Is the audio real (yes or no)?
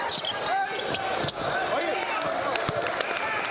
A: yes